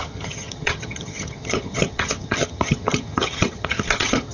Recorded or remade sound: remade